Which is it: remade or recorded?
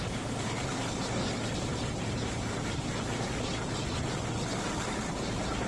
recorded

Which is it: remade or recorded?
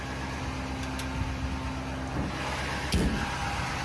recorded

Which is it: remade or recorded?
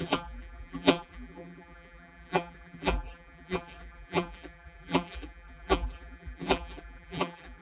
remade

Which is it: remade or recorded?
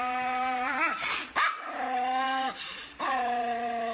remade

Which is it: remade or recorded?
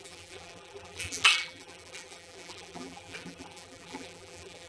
remade